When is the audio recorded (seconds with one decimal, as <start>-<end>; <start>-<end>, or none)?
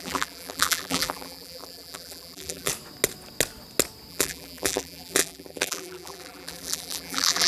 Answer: 2.7-4.1